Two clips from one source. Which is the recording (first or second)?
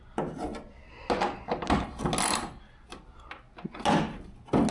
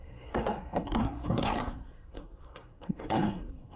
first